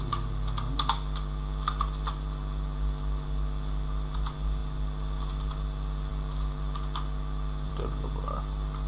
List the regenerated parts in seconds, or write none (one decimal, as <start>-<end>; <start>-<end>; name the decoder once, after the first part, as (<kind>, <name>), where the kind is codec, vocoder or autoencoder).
none